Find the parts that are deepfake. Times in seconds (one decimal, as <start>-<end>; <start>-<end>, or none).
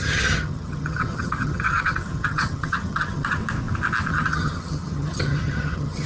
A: 0.0-3.4; 4.1-6.1